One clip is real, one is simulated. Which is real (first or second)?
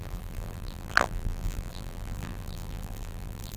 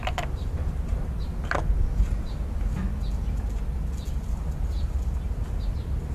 second